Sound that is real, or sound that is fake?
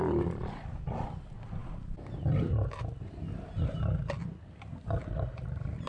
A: real